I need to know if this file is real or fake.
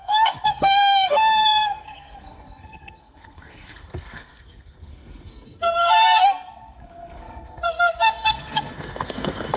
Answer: fake